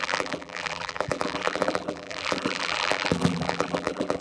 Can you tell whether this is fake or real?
fake